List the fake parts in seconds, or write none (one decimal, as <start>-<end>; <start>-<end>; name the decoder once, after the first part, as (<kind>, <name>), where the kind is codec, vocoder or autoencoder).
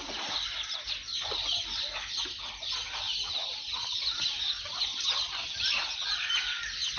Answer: none